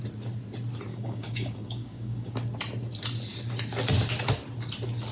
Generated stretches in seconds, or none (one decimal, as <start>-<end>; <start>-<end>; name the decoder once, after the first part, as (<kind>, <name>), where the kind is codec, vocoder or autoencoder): 0.9-2.3 (codec, DAC)